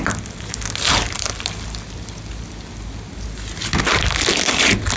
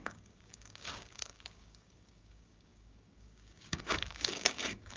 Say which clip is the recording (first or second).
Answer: first